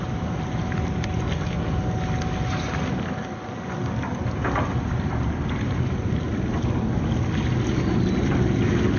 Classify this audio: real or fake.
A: real